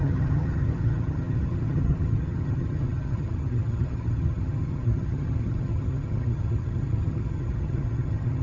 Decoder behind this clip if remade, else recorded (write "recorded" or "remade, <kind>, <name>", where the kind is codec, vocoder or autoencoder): remade, vocoder, HiFi-GAN